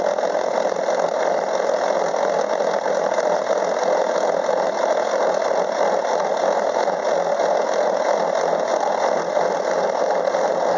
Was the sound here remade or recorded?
recorded